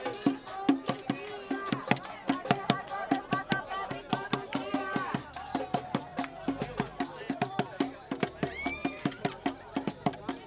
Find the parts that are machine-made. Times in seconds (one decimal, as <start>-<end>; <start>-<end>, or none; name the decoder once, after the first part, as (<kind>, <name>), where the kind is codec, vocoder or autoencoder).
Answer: none